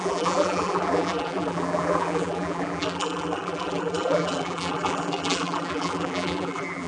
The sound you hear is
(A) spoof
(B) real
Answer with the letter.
A